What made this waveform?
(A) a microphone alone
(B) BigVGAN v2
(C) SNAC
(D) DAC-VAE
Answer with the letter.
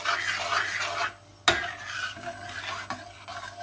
A